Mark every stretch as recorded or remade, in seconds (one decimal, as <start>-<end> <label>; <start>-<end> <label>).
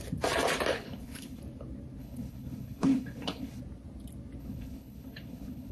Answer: 0.0-0.7 recorded; 0.7-1.4 remade; 1.4-2.0 recorded; 2.0-3.6 remade; 3.6-4.4 recorded; 4.4-5.7 remade